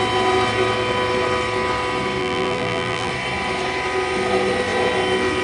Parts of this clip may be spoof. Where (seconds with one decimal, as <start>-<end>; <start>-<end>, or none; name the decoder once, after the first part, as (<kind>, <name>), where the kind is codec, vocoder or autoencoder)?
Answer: 2.2-3.1 (vocoder, BigVGAN v2)